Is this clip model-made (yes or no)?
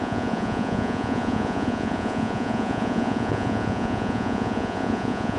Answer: yes